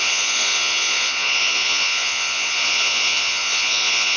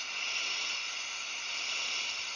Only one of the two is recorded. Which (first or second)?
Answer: second